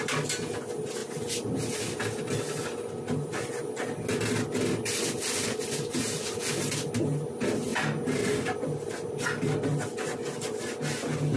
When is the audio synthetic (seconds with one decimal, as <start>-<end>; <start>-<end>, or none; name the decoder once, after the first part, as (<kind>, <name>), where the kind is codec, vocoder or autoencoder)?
none